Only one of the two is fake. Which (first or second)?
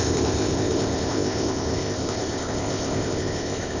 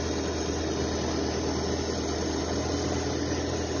first